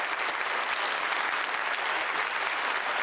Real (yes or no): yes